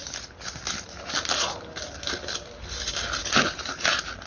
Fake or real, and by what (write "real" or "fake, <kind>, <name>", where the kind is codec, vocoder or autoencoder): real